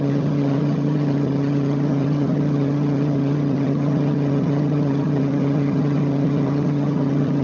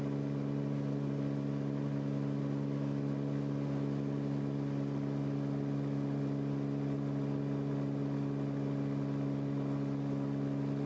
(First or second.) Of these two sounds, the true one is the second